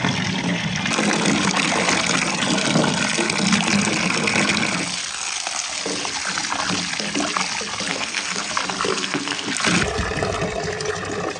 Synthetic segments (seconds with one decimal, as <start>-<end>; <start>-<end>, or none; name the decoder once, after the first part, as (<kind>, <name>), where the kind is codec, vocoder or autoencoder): 7.9-8.5 (codec, SNAC); 8.9-9.5